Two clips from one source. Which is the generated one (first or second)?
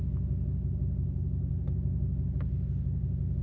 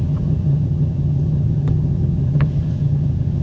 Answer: second